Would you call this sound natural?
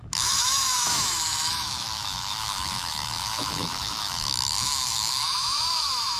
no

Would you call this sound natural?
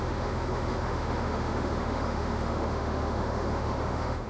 no